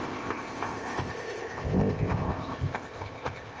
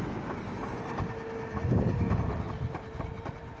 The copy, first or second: first